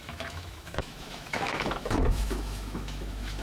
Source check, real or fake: fake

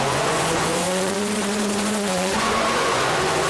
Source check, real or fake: fake